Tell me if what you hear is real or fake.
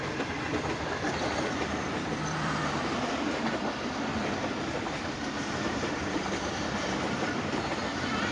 fake